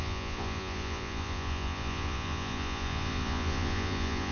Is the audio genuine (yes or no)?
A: no